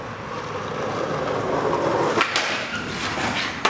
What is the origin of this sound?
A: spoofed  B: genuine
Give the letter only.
A